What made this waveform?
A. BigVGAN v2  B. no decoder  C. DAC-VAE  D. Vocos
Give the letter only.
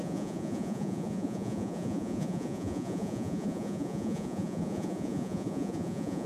D